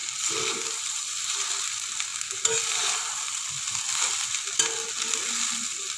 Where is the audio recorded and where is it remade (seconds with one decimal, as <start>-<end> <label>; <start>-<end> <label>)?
0.0-6.0 recorded